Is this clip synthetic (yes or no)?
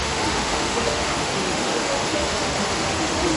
yes